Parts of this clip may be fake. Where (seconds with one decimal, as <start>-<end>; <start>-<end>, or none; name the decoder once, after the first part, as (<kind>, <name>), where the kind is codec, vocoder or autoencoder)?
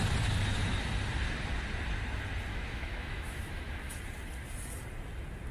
2.5-3.9 (autoencoder, DAC-VAE)